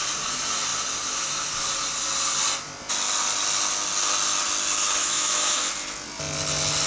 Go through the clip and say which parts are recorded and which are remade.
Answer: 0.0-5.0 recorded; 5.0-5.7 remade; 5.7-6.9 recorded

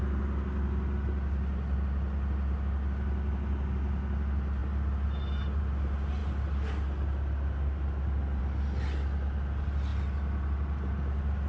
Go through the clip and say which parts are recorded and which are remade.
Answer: 0.0-11.5 recorded